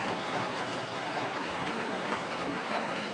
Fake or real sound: fake